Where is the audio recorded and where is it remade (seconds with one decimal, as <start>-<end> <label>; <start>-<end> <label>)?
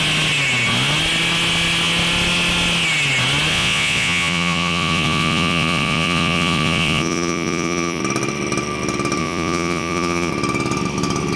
0.0-3.5 recorded; 3.5-8.0 remade; 8.0-9.2 recorded; 9.2-10.3 remade; 10.3-11.4 recorded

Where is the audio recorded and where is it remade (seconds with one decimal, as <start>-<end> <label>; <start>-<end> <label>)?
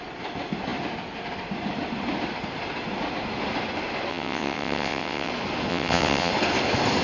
0.0-4.1 recorded; 4.1-5.3 remade; 5.3-5.7 recorded; 5.7-6.3 remade; 6.3-7.0 recorded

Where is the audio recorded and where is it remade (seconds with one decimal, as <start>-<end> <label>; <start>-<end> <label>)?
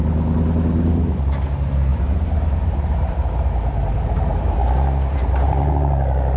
0.0-1.9 recorded; 1.9-5.7 remade; 5.7-6.4 recorded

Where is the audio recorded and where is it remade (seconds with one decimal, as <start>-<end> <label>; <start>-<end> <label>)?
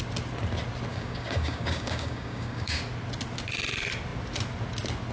0.0-0.9 recorded; 0.9-2.8 remade; 2.8-5.1 recorded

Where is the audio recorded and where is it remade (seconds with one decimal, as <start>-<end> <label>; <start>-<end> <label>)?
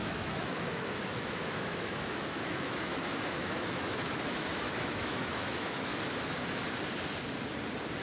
0.0-5.9 remade; 5.9-8.0 recorded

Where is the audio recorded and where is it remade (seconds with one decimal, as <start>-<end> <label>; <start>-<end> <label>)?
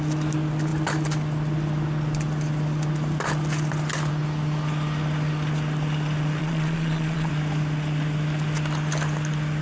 0.0-6.4 recorded; 6.4-7.3 remade; 7.3-9.6 recorded